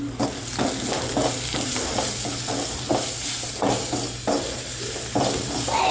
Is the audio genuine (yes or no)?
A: yes